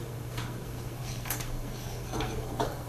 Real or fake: fake